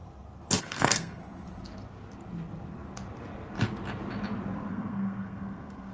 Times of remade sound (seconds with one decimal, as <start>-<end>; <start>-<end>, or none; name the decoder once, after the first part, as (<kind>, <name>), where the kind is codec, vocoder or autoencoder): 0.6-1.2 (codec, SNAC); 4.7-5.9